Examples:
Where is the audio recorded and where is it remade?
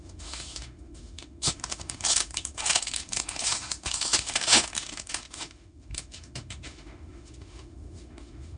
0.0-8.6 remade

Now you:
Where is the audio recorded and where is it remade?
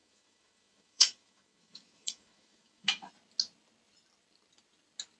0.0-3.1 remade; 3.1-5.2 recorded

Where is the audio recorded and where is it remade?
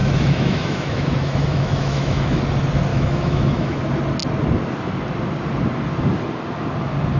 0.0-2.4 remade; 2.4-2.9 recorded; 2.9-3.8 remade; 3.8-7.2 recorded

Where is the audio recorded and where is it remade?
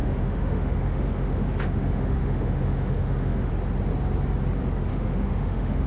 0.0-3.5 remade; 3.5-4.9 recorded; 4.9-5.9 remade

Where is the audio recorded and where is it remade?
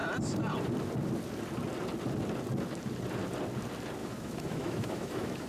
0.0-4.0 recorded; 4.0-5.5 remade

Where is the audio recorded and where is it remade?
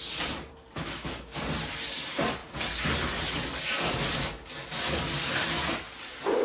0.0-0.7 recorded; 0.7-1.4 remade; 1.4-6.4 recorded